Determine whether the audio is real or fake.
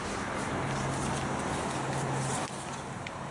real